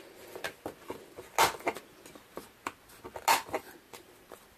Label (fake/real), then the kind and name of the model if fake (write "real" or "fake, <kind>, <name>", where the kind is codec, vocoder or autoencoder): real